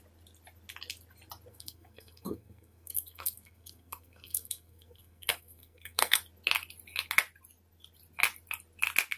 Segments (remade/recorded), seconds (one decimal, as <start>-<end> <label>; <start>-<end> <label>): 0.0-1.5 recorded; 1.5-6.2 remade; 6.2-9.2 recorded